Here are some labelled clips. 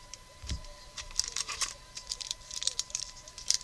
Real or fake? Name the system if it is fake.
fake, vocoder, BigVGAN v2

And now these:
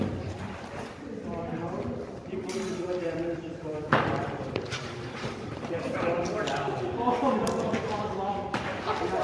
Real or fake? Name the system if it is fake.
fake, vocoder, BigVGAN v2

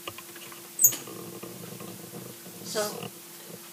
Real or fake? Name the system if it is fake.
real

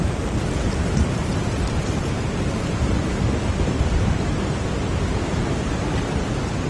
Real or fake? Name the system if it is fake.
fake, vocoder, BigVGAN v2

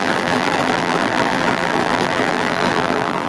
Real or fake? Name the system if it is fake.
fake, vocoder, BigVGAN v2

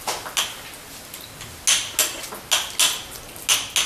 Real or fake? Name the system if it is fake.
real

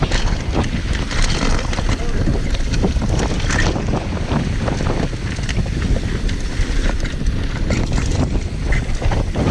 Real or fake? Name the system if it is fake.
fake, vocoder, BigVGAN v2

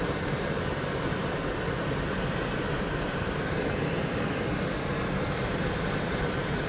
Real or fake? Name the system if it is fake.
fake, vocoder, BigVGAN v2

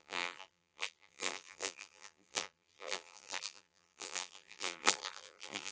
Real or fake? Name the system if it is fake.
fake, vocoder, BigVGAN v2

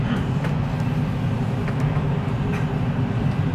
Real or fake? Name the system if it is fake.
real